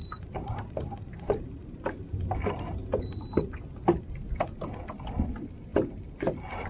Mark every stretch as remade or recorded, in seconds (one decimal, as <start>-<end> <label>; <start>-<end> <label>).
0.0-3.2 remade; 3.2-6.7 recorded